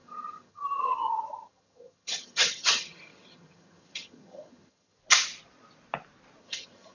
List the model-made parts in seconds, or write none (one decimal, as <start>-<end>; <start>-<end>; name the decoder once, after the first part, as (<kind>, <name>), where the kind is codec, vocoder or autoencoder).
0.0-5.0 (vocoder, HiFi-GAN); 6.4-6.9